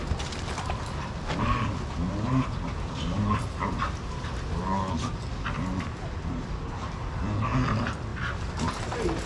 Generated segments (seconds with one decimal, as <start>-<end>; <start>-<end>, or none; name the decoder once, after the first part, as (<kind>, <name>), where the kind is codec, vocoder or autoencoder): 3.4-4.6 (vocoder, BigVGAN v2)

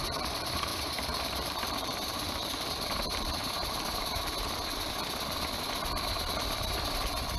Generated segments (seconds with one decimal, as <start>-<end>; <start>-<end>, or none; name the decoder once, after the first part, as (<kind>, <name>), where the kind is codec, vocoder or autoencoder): 0.7-4.9 (vocoder, BigVGAN v2)